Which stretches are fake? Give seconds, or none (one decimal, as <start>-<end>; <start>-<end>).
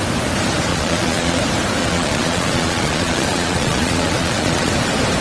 0.7-1.4; 1.8-4.7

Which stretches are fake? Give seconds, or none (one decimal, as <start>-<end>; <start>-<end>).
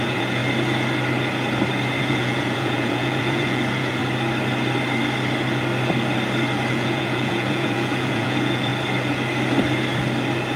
0.0-0.4; 2.0-4.0; 6.7-8.7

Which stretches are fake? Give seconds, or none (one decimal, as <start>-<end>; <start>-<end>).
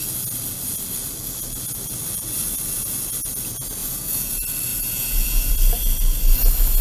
3.8-4.3; 4.7-5.5